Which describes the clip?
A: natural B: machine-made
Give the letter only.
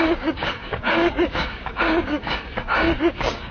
B